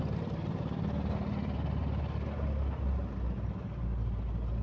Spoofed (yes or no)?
no